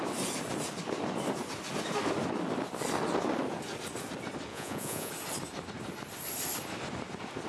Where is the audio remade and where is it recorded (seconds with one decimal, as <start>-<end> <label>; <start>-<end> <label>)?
0.0-4.5 recorded; 4.5-5.1 remade; 5.1-7.5 recorded